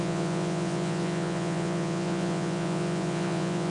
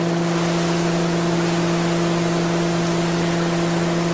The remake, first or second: first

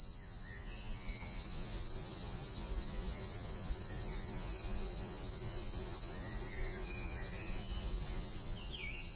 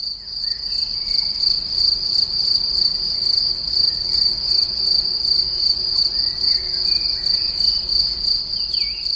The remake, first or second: first